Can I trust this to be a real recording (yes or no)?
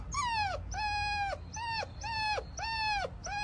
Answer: yes